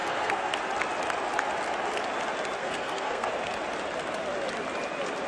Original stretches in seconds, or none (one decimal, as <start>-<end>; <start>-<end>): 0.5-2.6; 3.3-5.3